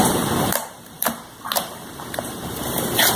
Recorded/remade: remade